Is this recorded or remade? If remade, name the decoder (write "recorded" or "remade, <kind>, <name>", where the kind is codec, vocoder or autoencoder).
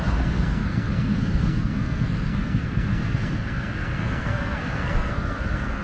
remade, codec, SNAC